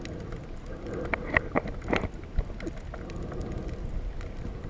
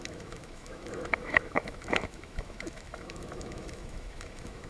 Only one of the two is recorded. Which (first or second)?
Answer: first